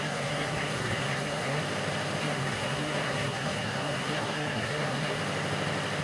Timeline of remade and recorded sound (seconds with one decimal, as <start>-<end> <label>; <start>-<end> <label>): 0.0-1.6 remade; 1.6-2.2 recorded; 2.2-5.2 remade; 5.2-6.0 recorded